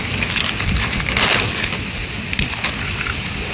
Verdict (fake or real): real